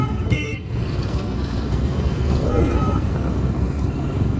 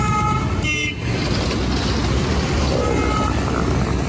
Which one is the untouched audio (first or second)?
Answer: second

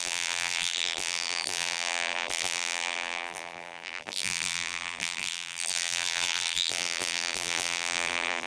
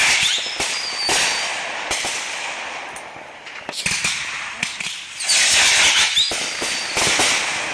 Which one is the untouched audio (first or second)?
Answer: second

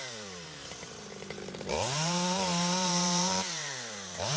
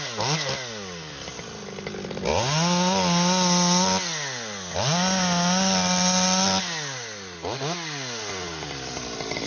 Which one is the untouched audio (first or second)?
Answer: second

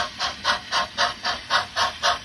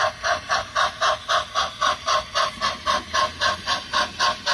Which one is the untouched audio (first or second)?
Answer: second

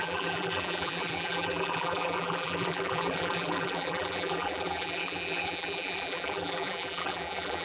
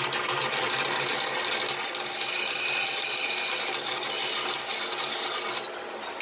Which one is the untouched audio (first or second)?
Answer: second